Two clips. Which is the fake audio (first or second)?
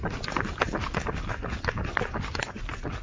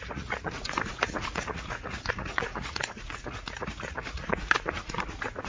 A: second